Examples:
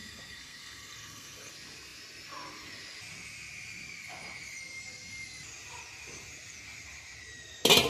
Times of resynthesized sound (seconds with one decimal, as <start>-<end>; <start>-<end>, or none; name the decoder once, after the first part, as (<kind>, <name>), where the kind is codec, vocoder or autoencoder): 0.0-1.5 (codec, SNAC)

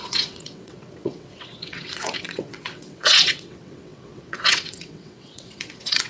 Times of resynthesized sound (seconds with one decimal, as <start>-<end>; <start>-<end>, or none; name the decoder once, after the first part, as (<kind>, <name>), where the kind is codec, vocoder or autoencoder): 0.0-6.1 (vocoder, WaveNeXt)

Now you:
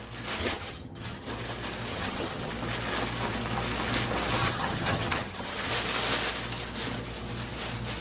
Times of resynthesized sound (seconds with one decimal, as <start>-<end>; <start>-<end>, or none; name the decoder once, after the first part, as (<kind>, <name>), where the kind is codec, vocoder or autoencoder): 0.4-1.3 (vocoder, HiFi-GAN); 1.9-2.5; 4.4-5.7